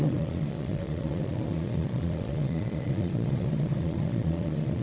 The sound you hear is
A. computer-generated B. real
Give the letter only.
A